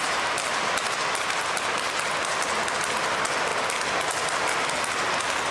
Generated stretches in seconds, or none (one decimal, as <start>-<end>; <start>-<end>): none